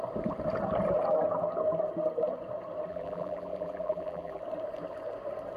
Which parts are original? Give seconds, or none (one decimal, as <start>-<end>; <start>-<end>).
0.0-2.9; 4.4-5.6